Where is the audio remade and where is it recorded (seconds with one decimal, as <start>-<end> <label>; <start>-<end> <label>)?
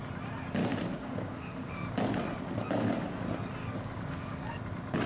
0.0-0.6 recorded; 0.6-1.7 remade; 1.7-3.6 recorded; 3.6-4.5 remade; 4.5-5.1 recorded